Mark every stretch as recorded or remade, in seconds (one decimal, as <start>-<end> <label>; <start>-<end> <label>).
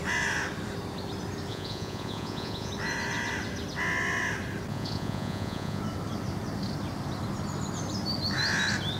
0.0-1.5 recorded; 1.5-2.7 remade; 2.7-4.7 recorded; 4.7-5.8 remade; 5.8-9.0 recorded